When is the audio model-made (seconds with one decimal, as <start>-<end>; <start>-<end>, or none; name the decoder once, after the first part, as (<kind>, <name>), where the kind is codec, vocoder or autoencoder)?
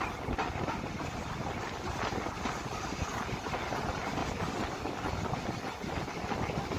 1.2-2.2 (vocoder, BigVGAN v2)